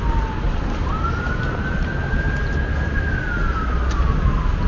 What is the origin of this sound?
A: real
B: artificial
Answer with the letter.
A